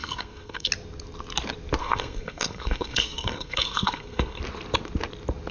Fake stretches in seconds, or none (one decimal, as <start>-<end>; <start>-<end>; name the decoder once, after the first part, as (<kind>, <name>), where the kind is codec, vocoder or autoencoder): 0.0-0.7 (codec, SNAC); 1.8-4.4